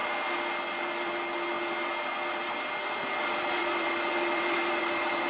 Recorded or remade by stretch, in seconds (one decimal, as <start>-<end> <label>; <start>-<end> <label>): 0.0-3.2 recorded; 3.2-5.3 remade